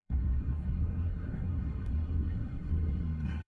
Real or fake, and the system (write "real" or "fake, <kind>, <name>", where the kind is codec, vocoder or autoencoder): fake, codec, SNAC